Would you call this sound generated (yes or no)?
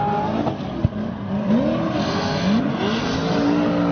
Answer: no